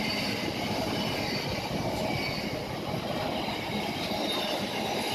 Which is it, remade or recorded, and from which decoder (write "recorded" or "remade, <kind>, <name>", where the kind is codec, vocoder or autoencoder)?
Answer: recorded